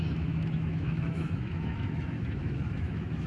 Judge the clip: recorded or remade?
remade